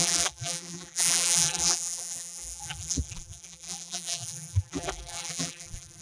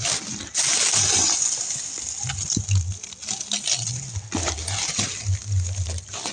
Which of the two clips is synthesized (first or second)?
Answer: first